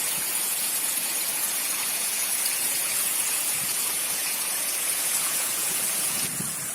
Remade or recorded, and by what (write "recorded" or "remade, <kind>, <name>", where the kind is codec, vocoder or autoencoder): remade, vocoder, Vocos